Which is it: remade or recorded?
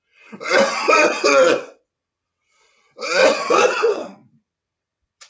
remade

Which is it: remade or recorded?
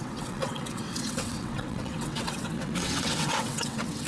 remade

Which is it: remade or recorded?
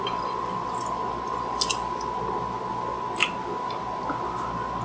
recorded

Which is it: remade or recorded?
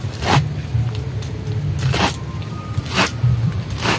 recorded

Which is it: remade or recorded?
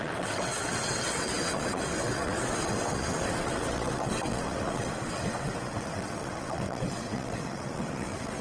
remade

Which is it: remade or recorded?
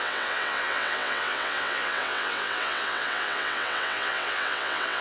remade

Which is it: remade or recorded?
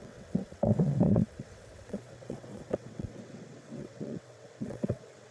remade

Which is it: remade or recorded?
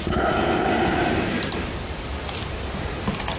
recorded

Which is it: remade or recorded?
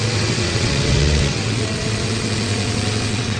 remade